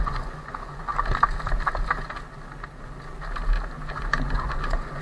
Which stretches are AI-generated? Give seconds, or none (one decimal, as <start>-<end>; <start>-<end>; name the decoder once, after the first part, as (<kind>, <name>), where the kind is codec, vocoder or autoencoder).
0.0-0.9 (vocoder, Vocos); 3.9-5.0